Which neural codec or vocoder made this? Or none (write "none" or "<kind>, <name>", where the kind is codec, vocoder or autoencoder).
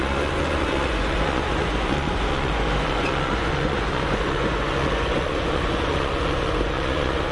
vocoder, Vocos